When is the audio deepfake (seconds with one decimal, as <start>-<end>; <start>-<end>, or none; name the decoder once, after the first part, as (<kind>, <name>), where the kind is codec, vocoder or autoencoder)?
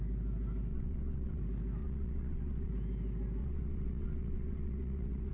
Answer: 0.7-1.4 (vocoder, WaveNeXt); 1.8-2.7; 3.4-5.3